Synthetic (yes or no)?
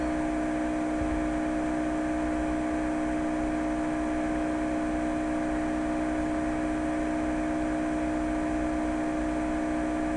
no